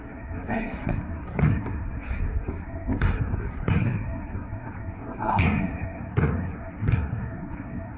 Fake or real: fake